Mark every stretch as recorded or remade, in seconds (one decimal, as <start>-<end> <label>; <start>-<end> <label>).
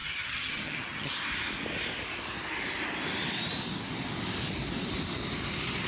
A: 0.0-1.1 remade; 1.1-5.9 recorded